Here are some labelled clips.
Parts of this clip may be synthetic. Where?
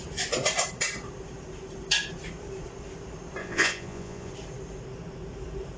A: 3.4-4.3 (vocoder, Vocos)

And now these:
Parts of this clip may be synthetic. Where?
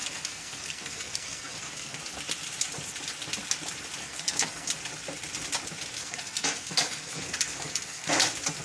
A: 0.0-2.0 (codec, SNAC); 4.0-4.7; 6.0-8.1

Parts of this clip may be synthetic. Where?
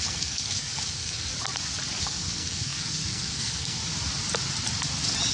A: 0.0-1.3 (codec, SNAC); 2.0-3.8